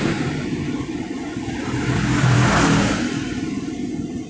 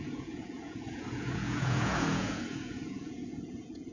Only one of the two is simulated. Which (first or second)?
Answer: second